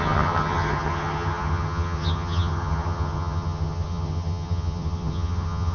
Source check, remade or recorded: remade